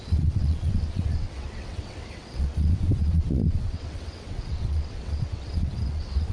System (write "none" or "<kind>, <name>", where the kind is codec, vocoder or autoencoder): vocoder, WaveNeXt